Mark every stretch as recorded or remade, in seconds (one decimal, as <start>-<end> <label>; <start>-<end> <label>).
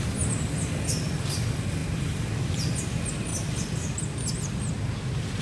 0.0-5.4 recorded